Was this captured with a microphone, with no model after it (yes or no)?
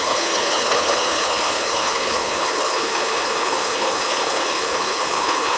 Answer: no